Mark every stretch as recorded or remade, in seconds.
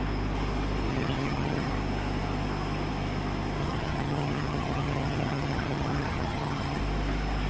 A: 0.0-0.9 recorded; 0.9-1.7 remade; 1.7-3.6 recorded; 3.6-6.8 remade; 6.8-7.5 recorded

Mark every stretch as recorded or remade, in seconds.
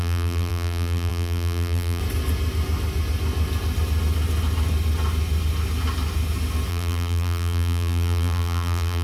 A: 0.0-2.0 remade; 2.0-6.7 recorded; 6.7-9.0 remade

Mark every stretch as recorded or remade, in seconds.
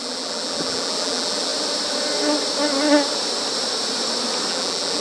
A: 0.0-1.5 remade; 1.5-4.5 recorded; 4.5-5.0 remade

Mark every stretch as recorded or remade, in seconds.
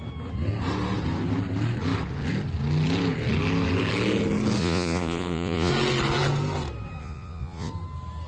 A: 0.0-4.6 recorded; 4.6-5.7 remade; 5.7-7.0 recorded; 7.0-7.7 remade; 7.7-8.3 recorded